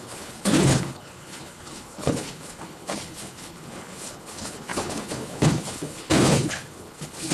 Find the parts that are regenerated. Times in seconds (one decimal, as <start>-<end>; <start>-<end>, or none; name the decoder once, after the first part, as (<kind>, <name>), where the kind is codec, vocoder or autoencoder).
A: 0.0-7.3 (codec, HILCodec)